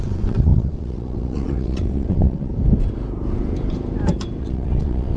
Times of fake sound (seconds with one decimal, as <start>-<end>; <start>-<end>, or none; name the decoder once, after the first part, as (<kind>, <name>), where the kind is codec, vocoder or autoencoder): 0.0-2.5 (vocoder, WaveNeXt); 4.4-5.2